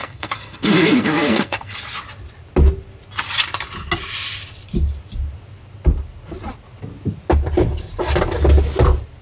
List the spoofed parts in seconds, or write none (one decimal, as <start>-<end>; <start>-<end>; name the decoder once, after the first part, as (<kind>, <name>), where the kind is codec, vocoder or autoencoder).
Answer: 0.0-1.7 (codec, SNAC)